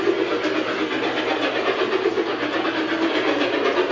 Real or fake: real